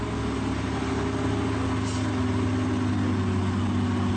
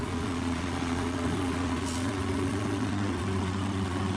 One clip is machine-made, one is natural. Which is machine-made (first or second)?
second